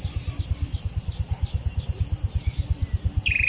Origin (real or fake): real